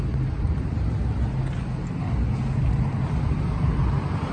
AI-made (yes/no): no